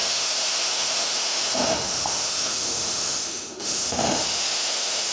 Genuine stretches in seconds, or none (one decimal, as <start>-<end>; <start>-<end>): none